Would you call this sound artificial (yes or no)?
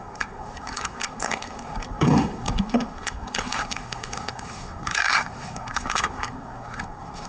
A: yes